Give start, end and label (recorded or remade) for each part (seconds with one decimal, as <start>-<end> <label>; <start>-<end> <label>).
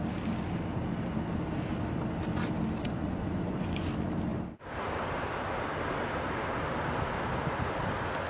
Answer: 0.0-2.8 recorded; 2.8-3.9 remade; 3.9-8.3 recorded